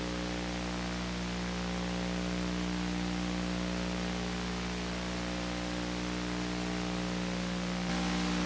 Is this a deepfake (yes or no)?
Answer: no